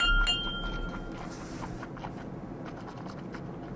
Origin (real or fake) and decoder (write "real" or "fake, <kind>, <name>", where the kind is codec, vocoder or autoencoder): real